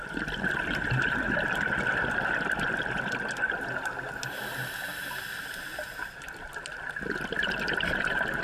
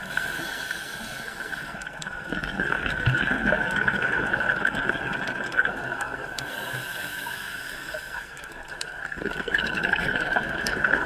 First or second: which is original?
first